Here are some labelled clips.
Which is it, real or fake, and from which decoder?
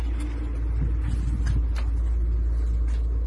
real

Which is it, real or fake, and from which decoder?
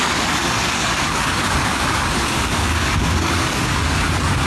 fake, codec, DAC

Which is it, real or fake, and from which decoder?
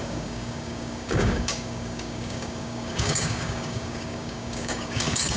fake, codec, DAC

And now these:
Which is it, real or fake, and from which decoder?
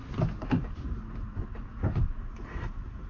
real